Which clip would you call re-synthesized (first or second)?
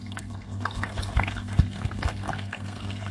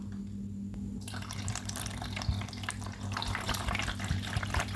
first